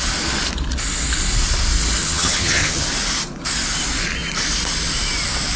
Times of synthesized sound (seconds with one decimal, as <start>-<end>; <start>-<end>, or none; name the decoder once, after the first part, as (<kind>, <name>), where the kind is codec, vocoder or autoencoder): 2.0-2.9 (vocoder, HiFi-GAN)